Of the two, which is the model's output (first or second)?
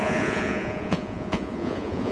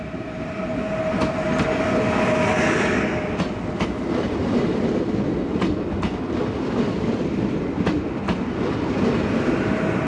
first